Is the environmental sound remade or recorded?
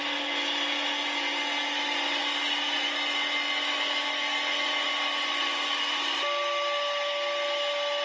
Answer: recorded